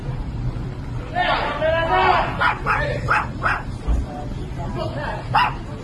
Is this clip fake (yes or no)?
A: no